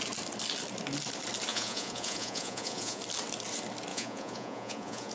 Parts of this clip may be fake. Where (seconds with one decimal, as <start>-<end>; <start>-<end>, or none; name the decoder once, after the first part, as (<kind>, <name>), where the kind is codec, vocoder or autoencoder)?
1.5-3.0 (vocoder, Vocos); 3.9-5.1

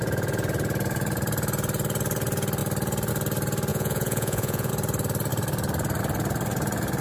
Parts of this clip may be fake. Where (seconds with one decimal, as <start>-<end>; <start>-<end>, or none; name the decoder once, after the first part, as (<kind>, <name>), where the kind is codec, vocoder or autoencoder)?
3.7-4.7 (vocoder, Vocos)